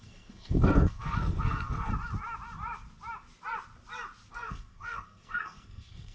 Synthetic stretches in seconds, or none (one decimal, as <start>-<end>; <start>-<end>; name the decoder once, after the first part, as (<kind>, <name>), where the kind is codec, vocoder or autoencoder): 0.0-1.9 (codec, SNAC); 4.3-6.1